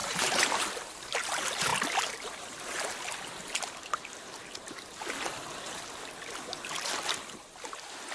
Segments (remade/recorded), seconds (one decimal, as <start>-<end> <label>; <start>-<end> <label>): 0.0-0.6 remade; 0.6-8.1 recorded